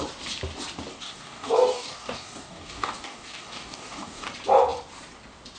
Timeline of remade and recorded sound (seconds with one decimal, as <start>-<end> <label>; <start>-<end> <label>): 0.0-0.9 recorded; 0.9-4.3 remade; 4.3-5.6 recorded